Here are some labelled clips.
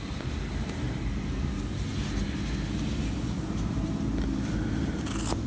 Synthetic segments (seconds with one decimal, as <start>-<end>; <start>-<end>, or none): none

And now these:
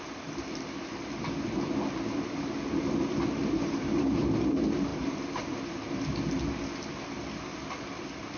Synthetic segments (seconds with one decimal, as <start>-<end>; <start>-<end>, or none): 3.4-4.3; 4.9-5.9

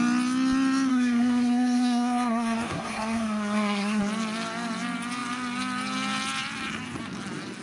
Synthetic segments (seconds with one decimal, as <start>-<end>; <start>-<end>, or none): 0.9-4.0

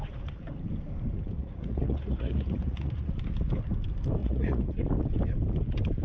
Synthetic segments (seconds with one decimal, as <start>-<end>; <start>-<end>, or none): 1.4-3.1; 4.2-4.8

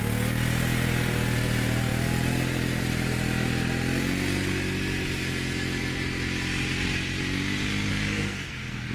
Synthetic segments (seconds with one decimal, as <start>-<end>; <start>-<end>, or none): 7.9-8.9

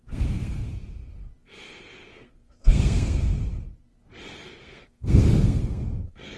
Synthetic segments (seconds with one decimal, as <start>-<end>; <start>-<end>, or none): 0.0-0.7; 2.1-3.3; 4.6-6.4

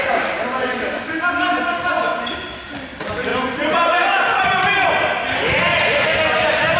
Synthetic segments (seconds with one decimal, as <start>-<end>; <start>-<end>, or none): none

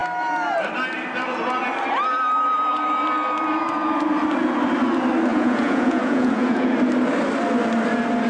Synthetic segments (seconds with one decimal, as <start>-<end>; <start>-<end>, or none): 5.3-6.7